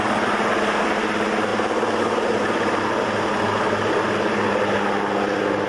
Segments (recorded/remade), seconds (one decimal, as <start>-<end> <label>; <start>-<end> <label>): 0.0-5.7 recorded